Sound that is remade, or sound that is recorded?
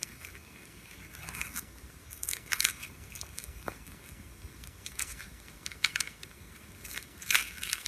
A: remade